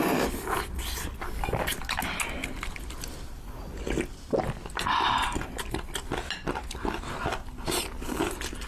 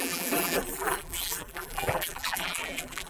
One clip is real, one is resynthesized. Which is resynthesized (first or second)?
second